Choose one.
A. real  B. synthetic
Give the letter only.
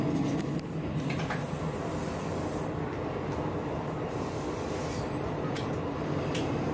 A